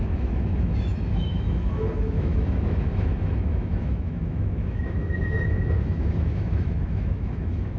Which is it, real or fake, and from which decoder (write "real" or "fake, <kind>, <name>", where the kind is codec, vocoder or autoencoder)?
fake, autoencoder, DAC-VAE